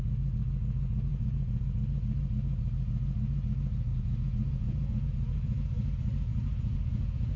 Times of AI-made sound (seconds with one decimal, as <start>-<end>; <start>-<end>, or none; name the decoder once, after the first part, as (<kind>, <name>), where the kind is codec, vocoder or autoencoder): 1.1-1.6 (vocoder, Vocos); 3.9-5.1; 6.3-7.4